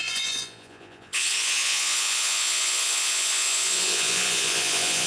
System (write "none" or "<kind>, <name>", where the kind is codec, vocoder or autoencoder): vocoder, Vocos